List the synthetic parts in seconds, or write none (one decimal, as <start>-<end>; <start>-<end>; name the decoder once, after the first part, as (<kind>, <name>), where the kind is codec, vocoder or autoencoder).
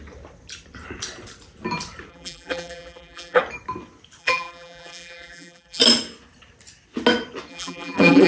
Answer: 2.1-3.4 (vocoder, BigVGAN v2); 4.2-5.8; 7.5-8.3